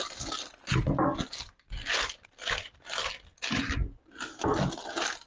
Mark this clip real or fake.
real